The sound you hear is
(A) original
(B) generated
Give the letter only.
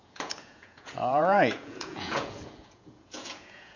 B